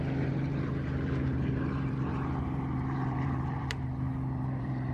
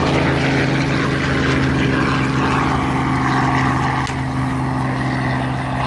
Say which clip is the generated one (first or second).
first